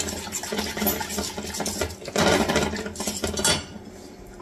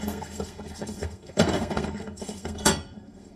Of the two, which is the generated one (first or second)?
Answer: second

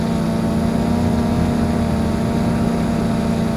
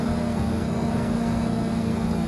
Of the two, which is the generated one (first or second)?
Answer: second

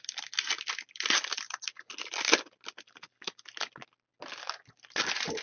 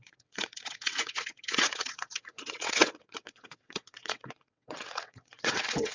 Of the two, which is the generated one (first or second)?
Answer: second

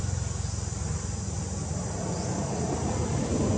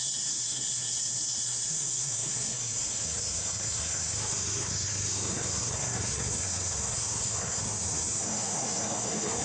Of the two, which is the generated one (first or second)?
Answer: second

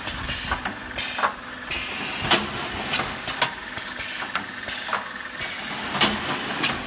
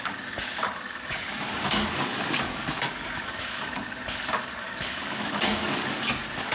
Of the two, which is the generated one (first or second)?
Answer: second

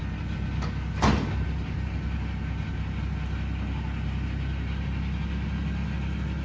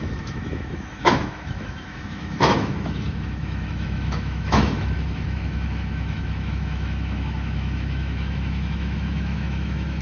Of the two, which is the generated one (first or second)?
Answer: second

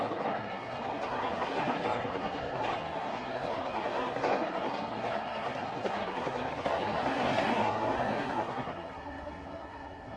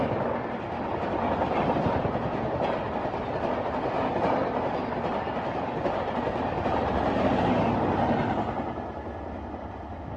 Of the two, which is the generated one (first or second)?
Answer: first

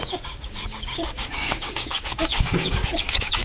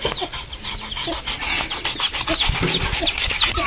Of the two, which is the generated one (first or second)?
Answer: first